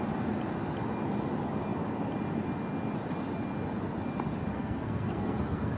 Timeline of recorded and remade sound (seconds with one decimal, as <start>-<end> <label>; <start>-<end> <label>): 0.0-4.5 recorded; 4.5-5.8 remade